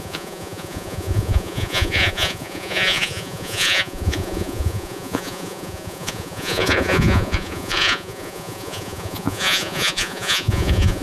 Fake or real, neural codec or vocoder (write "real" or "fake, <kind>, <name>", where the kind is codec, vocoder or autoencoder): fake, vocoder, Vocos